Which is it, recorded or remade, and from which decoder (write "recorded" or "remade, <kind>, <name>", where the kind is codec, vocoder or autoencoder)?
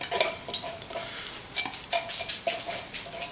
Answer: recorded